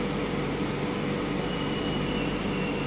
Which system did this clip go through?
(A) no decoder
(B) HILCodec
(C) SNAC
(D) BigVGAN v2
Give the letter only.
A